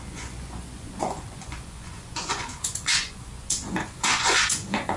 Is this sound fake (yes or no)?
yes